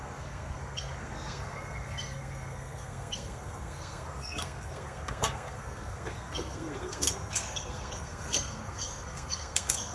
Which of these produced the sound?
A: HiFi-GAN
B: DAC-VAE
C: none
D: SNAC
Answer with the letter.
D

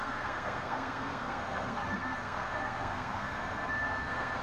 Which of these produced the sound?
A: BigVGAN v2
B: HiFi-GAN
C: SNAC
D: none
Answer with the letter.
C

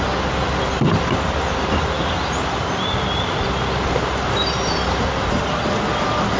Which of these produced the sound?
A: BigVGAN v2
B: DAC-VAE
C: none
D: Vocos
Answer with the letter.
C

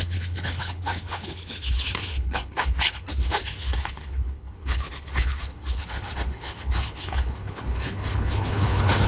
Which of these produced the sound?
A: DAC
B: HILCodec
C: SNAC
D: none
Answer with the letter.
B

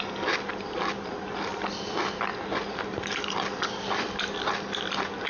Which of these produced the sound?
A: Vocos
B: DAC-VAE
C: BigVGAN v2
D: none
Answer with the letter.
D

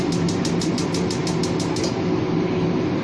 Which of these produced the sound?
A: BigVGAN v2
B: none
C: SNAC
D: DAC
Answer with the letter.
B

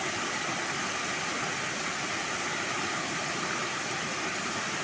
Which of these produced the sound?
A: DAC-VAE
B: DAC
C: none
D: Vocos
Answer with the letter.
C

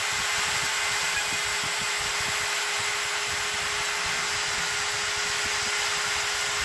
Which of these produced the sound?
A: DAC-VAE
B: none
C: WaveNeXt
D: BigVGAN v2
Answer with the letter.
B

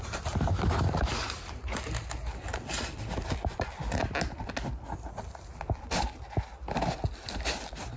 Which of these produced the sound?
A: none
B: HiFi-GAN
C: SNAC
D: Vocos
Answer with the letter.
A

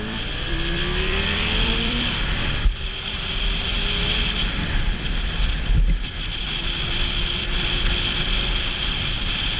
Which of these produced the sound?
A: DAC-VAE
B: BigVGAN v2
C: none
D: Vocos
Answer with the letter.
B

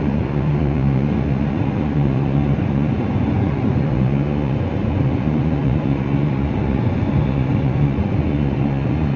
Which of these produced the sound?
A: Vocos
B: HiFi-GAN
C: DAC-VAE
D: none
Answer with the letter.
A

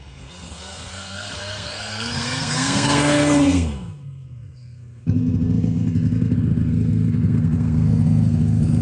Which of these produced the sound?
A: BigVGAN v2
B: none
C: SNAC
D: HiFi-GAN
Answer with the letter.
C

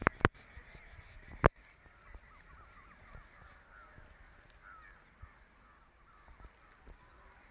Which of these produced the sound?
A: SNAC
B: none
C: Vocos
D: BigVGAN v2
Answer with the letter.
B